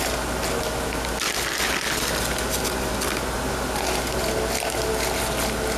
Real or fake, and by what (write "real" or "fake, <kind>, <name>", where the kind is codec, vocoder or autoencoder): real